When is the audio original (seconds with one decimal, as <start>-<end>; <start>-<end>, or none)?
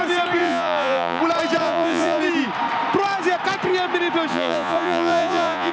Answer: 0.0-0.4; 1.2-1.6; 2.2-4.3